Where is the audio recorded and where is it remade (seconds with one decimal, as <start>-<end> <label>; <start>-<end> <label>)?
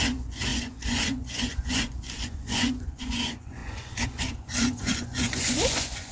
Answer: 0.0-6.1 remade